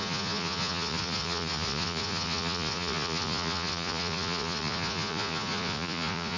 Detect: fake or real fake